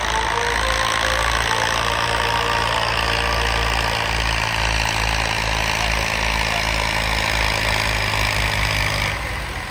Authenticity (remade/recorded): recorded